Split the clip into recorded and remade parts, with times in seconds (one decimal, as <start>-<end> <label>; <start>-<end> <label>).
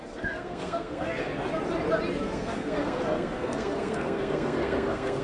0.0-1.3 remade; 1.3-2.2 recorded; 2.2-5.2 remade